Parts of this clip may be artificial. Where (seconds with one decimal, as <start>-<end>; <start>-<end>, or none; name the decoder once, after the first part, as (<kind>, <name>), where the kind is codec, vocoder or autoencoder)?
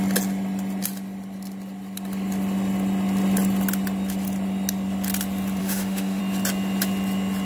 5.6-6.2 (autoencoder, DAC-VAE)